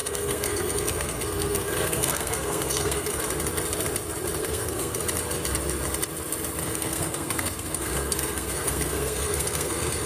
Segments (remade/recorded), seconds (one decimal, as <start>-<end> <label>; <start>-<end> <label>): 0.0-3.2 remade; 3.2-4.4 recorded; 4.4-5.0 remade; 5.0-6.6 recorded; 6.6-10.1 remade